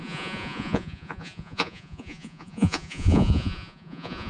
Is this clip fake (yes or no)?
yes